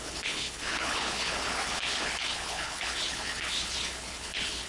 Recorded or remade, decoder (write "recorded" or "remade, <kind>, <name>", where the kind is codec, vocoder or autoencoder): remade, codec, HILCodec